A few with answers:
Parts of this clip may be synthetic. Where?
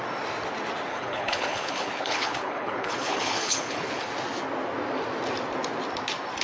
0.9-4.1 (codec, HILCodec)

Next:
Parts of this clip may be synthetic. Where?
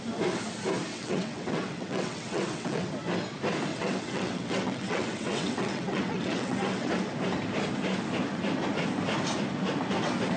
0.9-2.9 (vocoder, WaveNeXt); 3.7-6.9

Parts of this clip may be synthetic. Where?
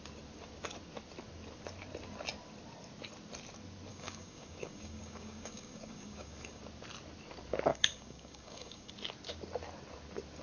3.9-6.6 (codec, DAC); 7.7-8.9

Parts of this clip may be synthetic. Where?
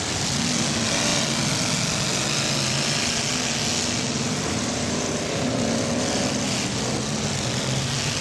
none